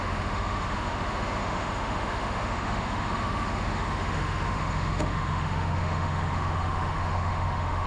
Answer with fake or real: fake